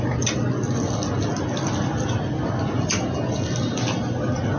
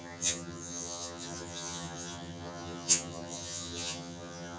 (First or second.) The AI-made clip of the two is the second